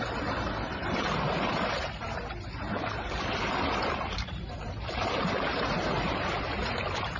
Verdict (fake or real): fake